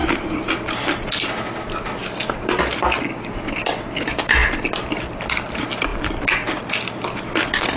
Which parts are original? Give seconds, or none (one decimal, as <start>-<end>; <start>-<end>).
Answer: 0.0-7.8